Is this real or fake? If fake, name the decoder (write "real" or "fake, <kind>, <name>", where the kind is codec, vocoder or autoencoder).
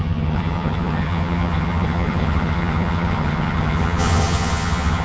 fake, vocoder, HiFi-GAN